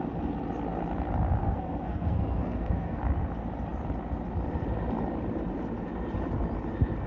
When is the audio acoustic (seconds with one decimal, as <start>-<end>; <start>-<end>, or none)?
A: 0.0-1.4; 3.0-7.1